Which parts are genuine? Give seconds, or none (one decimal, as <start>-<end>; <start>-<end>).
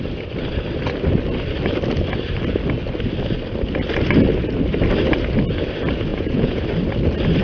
0.0-6.1; 6.6-7.4